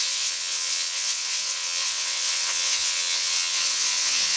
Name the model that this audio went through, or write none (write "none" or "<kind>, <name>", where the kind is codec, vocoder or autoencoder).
vocoder, WaveNeXt